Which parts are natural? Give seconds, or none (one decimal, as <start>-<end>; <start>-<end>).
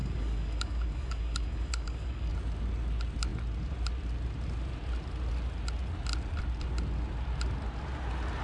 2.3-8.4